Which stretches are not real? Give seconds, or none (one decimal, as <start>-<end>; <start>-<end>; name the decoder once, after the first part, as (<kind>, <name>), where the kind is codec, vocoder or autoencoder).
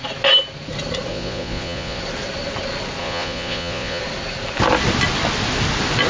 1.1-2.0 (vocoder, Vocos); 3.0-4.0